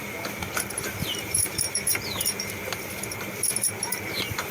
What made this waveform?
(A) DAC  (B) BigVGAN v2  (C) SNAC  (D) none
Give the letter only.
B